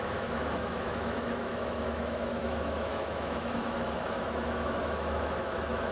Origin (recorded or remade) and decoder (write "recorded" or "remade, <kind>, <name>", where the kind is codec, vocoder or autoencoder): remade, autoencoder, DAC-VAE